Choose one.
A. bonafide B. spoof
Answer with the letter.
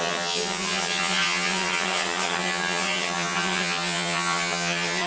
B